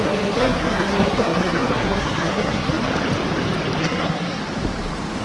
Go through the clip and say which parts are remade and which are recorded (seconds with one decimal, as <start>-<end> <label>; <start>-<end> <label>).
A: 0.0-2.9 remade; 2.9-3.8 recorded; 3.8-4.4 remade; 4.4-5.2 recorded